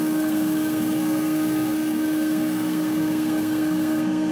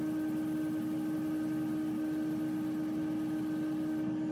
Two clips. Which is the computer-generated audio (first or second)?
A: first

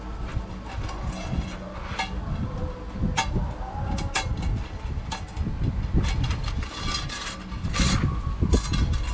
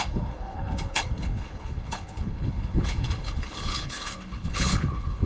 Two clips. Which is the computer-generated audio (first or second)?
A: second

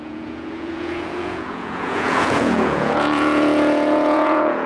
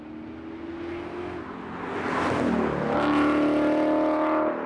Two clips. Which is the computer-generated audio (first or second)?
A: first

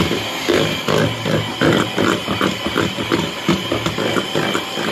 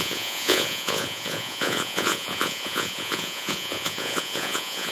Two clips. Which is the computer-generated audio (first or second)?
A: second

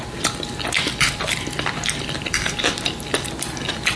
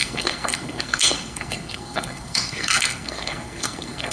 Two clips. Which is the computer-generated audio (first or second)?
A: second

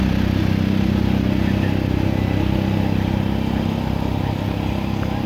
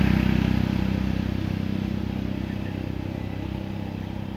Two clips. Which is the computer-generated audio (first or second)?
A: second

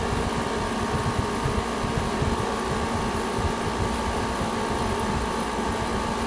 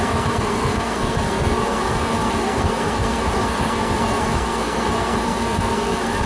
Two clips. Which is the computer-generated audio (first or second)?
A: second